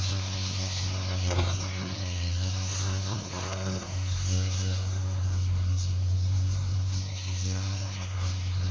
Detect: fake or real fake